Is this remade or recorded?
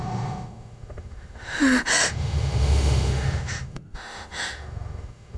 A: remade